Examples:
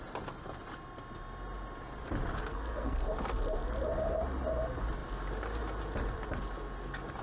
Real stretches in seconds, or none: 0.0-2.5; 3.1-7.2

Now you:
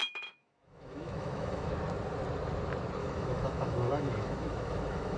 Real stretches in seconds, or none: 1.7-3.0

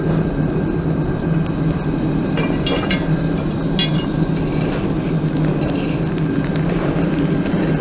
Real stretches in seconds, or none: 0.0-7.8

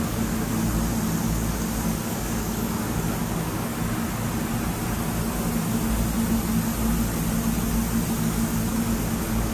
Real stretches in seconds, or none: 0.5-1.2; 3.7-8.2

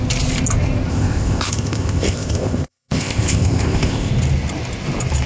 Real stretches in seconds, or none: 0.0-0.9; 4.1-5.3

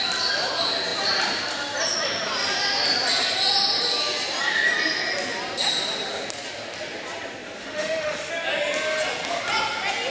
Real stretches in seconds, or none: 0.0-7.6; 8.3-10.1

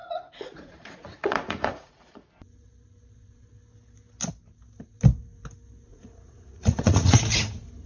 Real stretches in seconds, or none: 2.3-5.9; 7.2-7.9